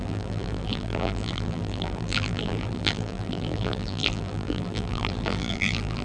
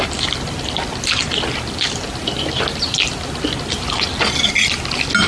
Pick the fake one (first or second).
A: first